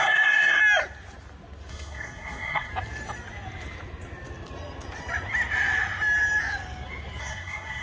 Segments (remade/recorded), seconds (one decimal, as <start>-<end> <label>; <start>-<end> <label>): 0.0-0.6 remade; 0.6-1.7 recorded; 1.7-2.7 remade; 2.7-7.2 recorded; 7.2-7.8 remade